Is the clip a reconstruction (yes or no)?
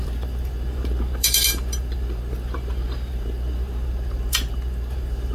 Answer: yes